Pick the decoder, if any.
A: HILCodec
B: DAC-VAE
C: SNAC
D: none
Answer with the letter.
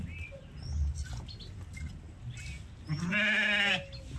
D